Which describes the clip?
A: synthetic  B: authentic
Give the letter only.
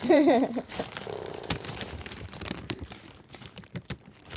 A